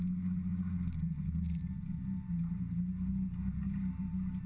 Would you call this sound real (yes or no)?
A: yes